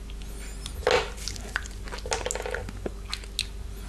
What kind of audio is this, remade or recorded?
recorded